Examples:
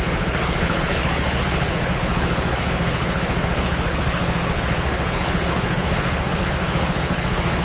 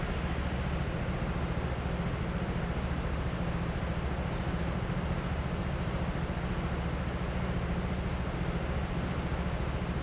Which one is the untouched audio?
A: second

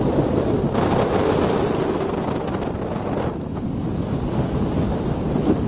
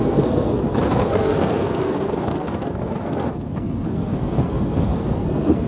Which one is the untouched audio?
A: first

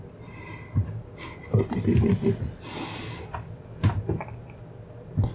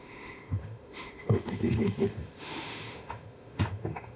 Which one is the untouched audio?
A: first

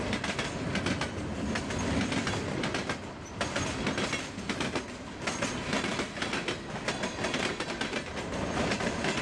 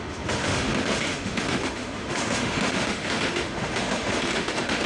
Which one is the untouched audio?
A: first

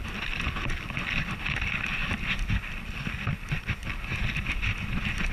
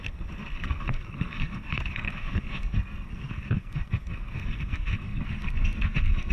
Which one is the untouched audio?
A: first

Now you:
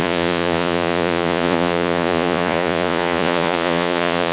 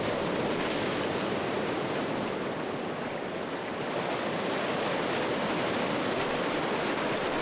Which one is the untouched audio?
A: second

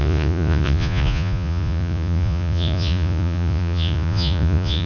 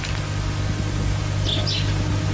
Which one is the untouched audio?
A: second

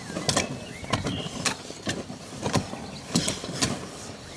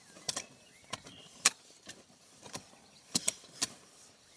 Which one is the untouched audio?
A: first